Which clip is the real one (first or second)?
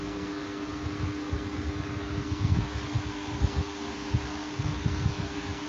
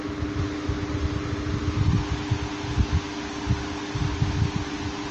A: second